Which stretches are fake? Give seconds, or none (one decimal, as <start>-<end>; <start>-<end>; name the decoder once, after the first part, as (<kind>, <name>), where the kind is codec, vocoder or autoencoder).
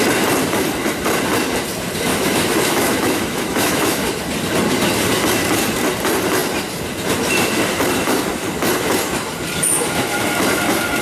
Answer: 2.1-4.1 (autoencoder, DAC-VAE)